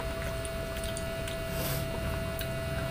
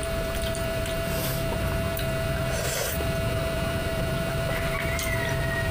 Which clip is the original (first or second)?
first